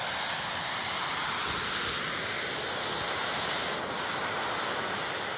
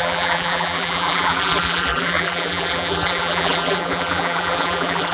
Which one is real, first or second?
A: first